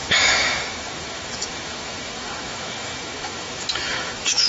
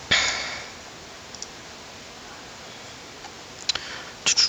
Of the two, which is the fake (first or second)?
first